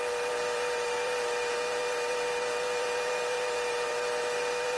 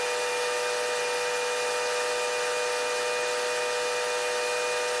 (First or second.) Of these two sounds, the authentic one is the second